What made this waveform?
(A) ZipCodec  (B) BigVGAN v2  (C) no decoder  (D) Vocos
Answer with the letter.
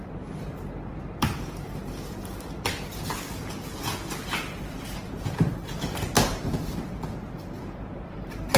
B